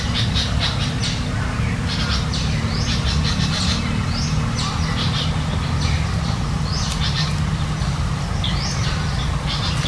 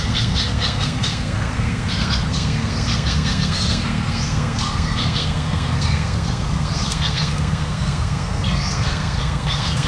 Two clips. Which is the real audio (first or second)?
first